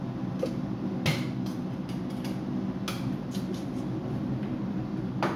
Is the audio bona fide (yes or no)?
yes